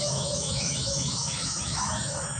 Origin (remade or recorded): remade